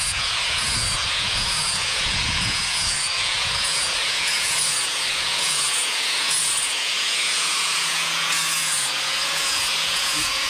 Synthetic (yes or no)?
yes